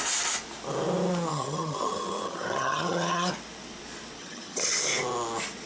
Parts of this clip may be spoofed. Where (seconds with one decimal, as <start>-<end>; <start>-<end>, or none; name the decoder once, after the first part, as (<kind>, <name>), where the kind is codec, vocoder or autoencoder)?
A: 1.3-3.3 (vocoder, HiFi-GAN); 4.2-4.8